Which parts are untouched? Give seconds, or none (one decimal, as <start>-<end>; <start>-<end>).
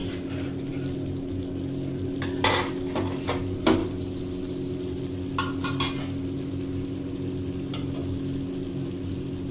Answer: 0.0-9.5